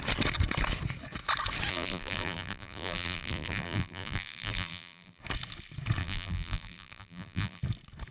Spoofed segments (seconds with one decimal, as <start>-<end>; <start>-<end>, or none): 1.7-5.2; 6.0-7.6